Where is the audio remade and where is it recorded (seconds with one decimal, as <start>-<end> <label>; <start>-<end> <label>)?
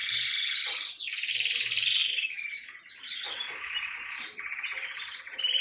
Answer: 0.0-5.6 remade